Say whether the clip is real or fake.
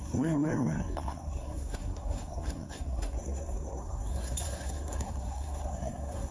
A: fake